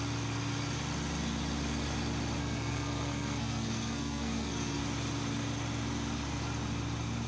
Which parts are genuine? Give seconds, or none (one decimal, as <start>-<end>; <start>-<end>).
0.0-2.4; 4.8-7.3